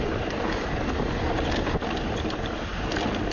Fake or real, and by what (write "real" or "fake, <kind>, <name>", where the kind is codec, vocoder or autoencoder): real